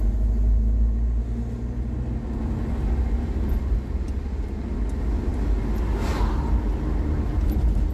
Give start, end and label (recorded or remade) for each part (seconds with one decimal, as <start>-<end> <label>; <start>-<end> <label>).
0.0-7.9 recorded